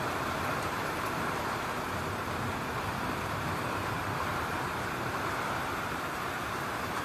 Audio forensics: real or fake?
fake